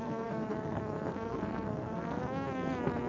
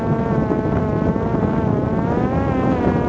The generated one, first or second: first